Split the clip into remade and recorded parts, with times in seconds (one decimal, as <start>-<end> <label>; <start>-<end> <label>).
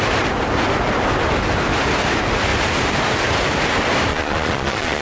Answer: 0.0-4.1 recorded; 4.1-5.0 remade